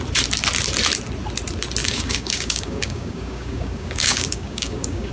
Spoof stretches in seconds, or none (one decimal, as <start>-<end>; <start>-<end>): 1.8-5.1